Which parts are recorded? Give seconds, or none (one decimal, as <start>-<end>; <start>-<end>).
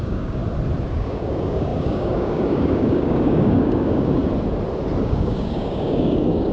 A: 0.4-0.9; 4.2-5.0